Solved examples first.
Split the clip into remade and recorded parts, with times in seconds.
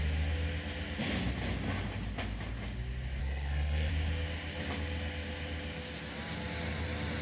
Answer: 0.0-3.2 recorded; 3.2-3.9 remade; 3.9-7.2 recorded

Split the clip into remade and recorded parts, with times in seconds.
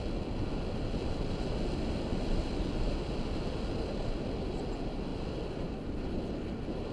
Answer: 0.0-6.9 recorded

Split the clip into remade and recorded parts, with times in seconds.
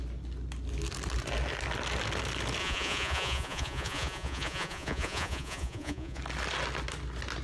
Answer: 0.0-2.6 recorded; 2.6-6.2 remade; 6.2-7.4 recorded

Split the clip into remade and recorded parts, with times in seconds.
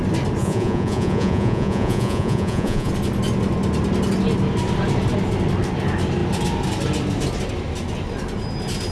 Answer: 0.0-0.4 recorded; 0.4-2.9 remade; 2.9-8.9 recorded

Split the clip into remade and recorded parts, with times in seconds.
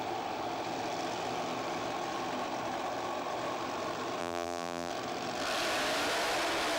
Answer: 0.0-4.2 recorded; 4.2-4.9 remade; 4.9-6.8 recorded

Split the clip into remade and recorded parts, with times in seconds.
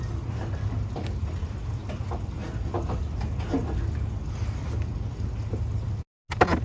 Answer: 0.0-6.6 recorded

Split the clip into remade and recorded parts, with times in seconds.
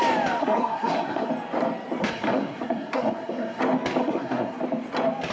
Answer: 0.0-0.4 recorded; 0.4-1.3 remade; 1.3-2.0 recorded; 2.0-3.6 remade; 3.6-4.0 recorded; 4.0-4.6 remade; 4.6-5.3 recorded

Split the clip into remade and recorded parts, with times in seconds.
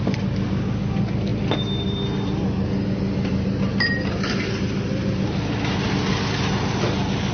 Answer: 0.0-7.3 recorded